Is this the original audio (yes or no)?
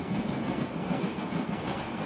no